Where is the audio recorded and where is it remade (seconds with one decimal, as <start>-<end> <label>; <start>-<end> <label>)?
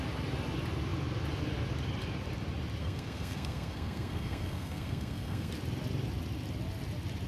0.0-2.8 recorded; 2.8-5.5 remade; 5.5-7.3 recorded